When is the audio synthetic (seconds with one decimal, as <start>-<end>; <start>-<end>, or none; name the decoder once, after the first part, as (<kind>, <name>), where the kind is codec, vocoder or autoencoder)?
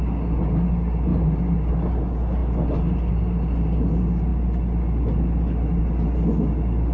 none